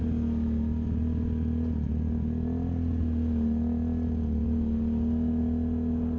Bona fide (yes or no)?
yes